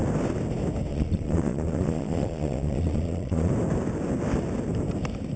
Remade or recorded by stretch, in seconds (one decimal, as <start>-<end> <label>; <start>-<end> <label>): 0.0-0.9 recorded; 0.9-3.5 remade; 3.5-5.4 recorded